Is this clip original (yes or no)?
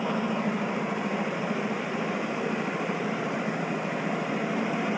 no